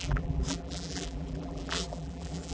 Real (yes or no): no